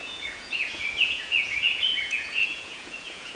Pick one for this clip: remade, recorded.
remade